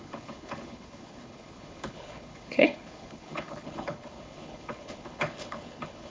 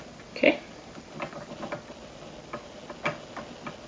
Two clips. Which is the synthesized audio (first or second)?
first